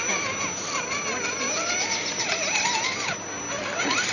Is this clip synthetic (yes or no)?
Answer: no